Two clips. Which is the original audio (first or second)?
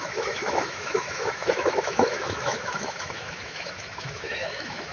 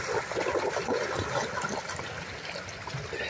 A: second